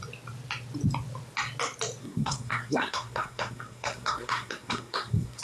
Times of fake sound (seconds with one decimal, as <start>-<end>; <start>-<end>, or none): 2.0-5.4